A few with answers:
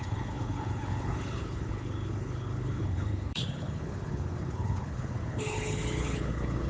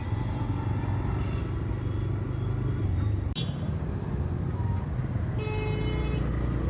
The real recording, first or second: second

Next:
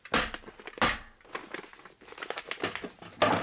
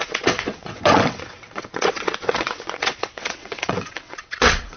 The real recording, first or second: first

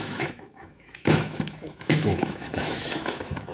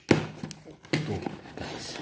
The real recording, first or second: second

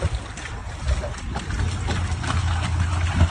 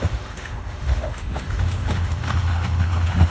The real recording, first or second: first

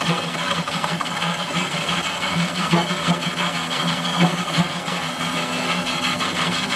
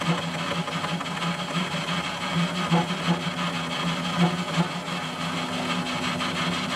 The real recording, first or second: second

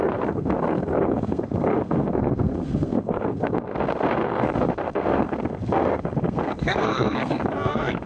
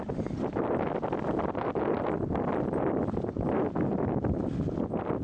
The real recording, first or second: second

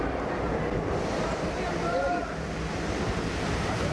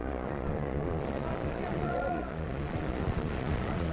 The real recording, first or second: first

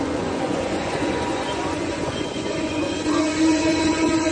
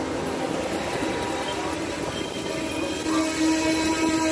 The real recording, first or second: second